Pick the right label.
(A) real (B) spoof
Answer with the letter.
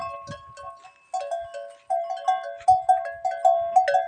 A